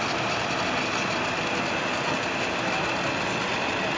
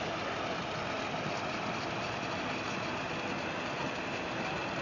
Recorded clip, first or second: first